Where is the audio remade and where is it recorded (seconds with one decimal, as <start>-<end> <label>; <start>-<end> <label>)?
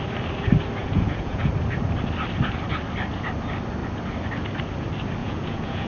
0.0-0.8 recorded; 0.8-1.5 remade; 1.5-5.2 recorded; 5.2-5.9 remade